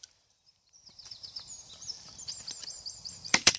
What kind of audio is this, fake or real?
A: fake